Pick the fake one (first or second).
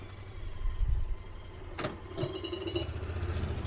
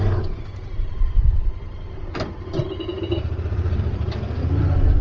second